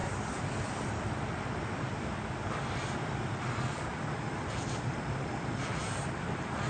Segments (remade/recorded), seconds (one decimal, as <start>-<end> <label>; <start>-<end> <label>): 0.0-6.7 remade